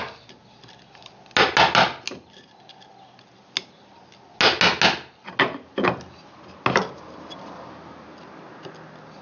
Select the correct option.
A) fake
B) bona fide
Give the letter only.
B